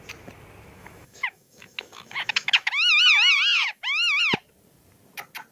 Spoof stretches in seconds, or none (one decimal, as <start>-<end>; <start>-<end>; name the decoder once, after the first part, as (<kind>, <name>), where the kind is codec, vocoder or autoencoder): 0.8-3.0 (autoencoder, DAC-VAE); 3.5-4.2

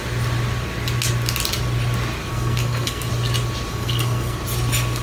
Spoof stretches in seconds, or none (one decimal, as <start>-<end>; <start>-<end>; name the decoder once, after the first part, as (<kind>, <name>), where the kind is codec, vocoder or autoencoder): 2.3-3.1 (codec, SNAC); 3.7-4.4

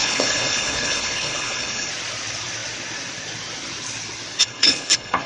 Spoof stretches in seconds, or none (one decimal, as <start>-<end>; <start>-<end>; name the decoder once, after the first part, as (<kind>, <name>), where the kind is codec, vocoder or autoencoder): 0.0-1.9 (codec, HILCodec); 4.4-5.3

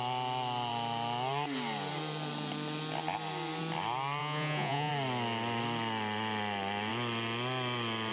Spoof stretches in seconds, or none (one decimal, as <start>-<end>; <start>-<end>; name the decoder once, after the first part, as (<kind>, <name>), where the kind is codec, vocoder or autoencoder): 4.2-4.9 (vocoder, Vocos)

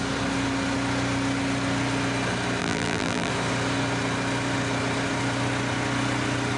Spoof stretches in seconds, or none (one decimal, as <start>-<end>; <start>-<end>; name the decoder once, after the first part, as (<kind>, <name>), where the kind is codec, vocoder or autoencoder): 2.6-3.3 (vocoder, BigVGAN v2)